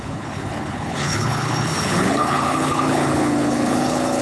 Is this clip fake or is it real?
fake